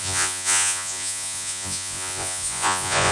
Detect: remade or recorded remade